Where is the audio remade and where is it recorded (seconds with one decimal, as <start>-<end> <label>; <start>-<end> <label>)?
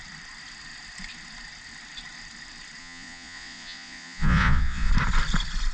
0.0-2.8 recorded; 2.8-4.9 remade; 4.9-5.7 recorded